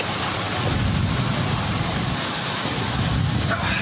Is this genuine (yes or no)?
yes